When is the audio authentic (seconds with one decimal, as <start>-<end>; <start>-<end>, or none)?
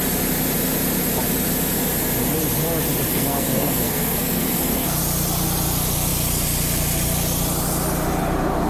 0.0-3.1; 5.0-8.7